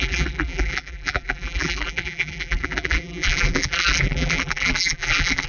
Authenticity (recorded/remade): remade